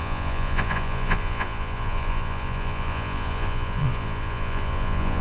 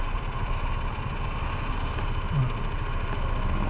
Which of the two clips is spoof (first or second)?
first